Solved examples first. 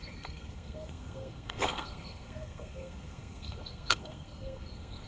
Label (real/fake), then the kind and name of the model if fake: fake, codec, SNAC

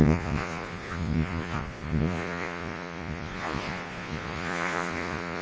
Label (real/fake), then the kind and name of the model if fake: fake, vocoder, Vocos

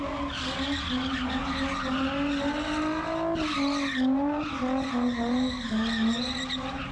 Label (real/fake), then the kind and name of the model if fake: real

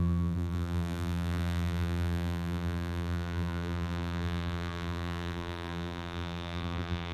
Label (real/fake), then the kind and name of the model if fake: fake, vocoder, BigVGAN v2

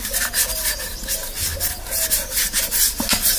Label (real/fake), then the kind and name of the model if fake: real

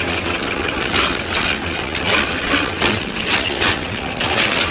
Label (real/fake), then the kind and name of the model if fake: fake, vocoder, WaveNeXt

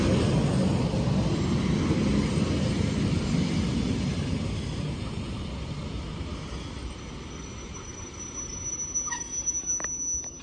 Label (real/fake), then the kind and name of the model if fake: real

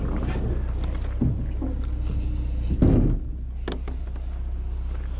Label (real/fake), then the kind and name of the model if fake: real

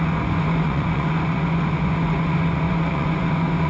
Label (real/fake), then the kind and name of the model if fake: fake, vocoder, Vocos